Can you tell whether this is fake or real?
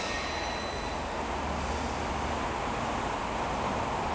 real